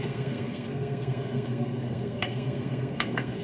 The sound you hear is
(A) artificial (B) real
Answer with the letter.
A